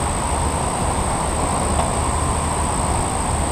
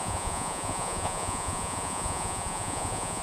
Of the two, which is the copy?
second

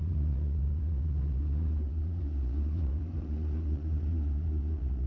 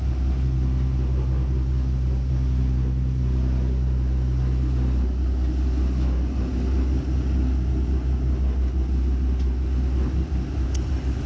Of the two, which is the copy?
first